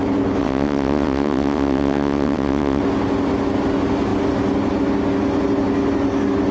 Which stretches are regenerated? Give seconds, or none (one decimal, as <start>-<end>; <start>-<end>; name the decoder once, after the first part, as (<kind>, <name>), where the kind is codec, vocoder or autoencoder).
0.4-2.8 (vocoder, WaveNeXt)